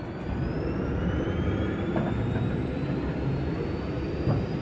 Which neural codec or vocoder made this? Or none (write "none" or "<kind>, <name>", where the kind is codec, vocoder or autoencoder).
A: vocoder, BigVGAN v2